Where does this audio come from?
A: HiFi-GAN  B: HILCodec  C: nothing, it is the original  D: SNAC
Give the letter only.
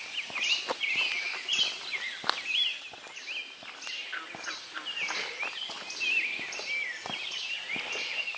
C